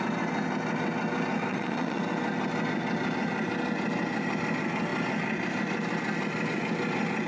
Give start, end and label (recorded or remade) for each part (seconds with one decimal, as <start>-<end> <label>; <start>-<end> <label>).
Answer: 0.0-1.5 recorded; 1.5-2.0 remade; 2.0-7.3 recorded